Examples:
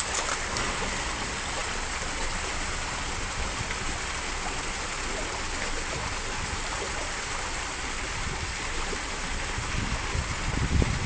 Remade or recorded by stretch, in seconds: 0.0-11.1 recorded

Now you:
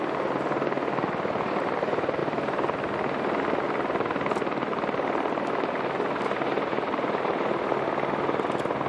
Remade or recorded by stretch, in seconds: 0.0-8.9 recorded